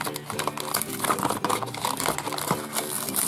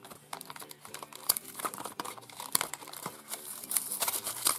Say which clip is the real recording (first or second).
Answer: first